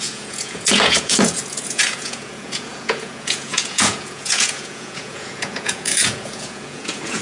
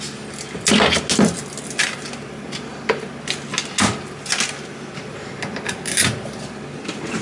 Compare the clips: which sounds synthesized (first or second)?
first